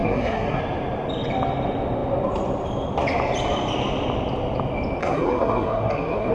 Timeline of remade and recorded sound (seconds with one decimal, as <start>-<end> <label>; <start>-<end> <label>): 0.0-0.6 remade; 0.6-5.0 recorded; 5.0-6.3 remade